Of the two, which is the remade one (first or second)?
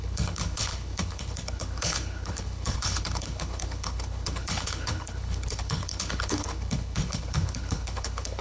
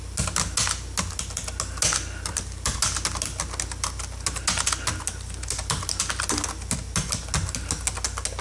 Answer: first